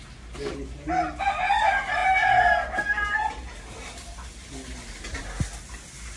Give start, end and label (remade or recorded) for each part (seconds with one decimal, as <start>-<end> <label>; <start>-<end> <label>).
0.0-6.2 recorded